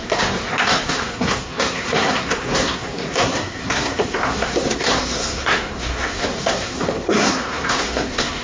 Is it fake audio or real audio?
fake